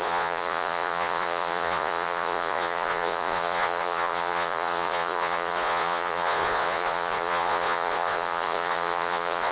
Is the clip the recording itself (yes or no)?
no